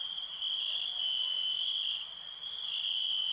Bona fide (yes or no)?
yes